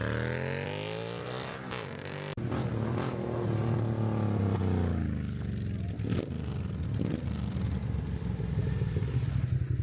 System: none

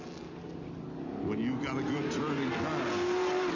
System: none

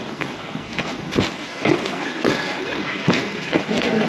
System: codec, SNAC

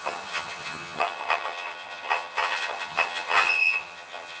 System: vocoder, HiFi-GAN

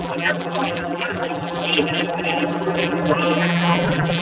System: vocoder, BigVGAN v2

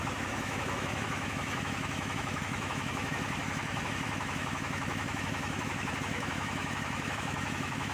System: autoencoder, DAC-VAE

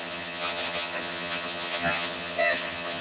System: vocoder, HiFi-GAN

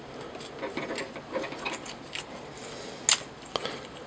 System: none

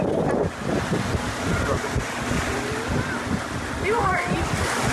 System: none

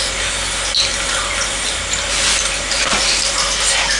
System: none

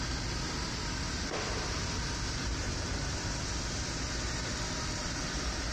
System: none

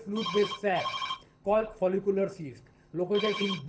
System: codec, HILCodec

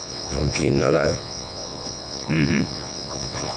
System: vocoder, WaveNeXt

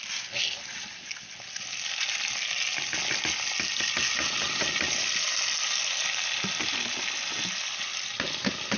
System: none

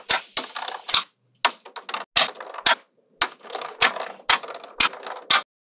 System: none